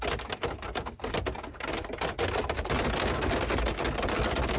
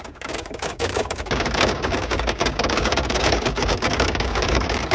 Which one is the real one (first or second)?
first